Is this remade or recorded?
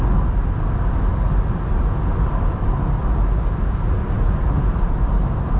recorded